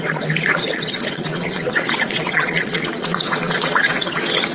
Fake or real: fake